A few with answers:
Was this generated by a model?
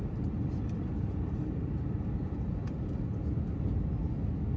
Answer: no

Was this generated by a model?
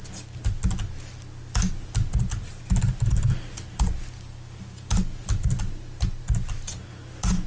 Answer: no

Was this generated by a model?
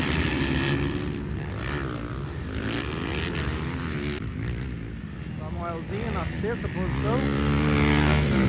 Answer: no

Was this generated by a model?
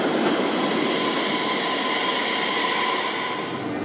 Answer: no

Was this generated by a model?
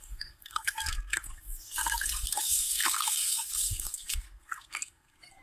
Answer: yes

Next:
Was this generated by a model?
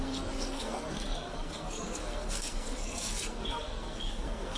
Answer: yes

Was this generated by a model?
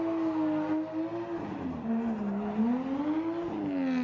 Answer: no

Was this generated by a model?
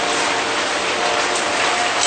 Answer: no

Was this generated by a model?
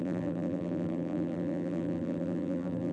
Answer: yes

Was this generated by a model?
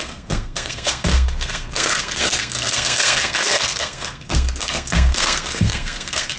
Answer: yes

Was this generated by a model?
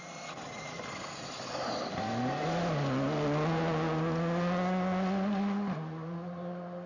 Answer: no